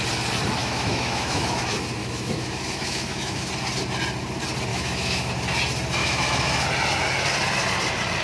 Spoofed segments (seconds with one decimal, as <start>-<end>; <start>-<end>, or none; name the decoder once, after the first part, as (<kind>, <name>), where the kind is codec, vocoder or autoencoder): 0.6-1.6 (autoencoder, DAC-VAE); 2.0-3.5; 4.7-5.3; 6.0-6.6